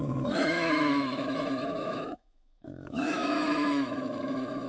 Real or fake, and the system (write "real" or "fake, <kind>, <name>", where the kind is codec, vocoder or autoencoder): fake, autoencoder, DAC-VAE